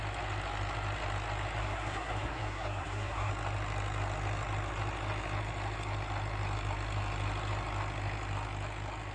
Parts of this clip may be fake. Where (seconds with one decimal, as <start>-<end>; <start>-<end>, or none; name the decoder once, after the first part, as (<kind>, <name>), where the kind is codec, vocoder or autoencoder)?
1.6-3.3 (codec, SNAC)